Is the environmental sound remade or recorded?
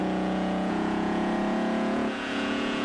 remade